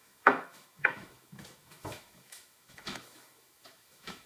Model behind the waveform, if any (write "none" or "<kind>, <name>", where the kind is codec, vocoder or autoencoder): autoencoder, DAC-VAE